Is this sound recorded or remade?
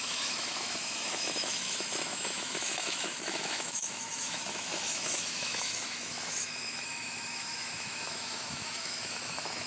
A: remade